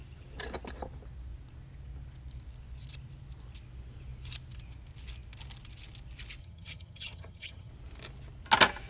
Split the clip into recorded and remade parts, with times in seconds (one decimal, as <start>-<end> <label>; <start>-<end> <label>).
0.0-6.4 recorded; 6.4-7.7 remade; 7.7-8.9 recorded